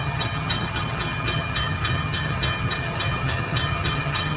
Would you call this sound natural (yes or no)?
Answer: no